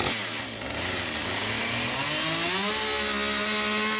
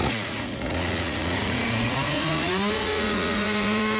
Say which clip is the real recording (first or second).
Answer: first